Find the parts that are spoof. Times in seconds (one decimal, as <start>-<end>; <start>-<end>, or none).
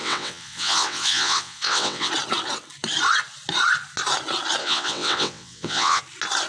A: 0.0-2.1; 4.6-6.0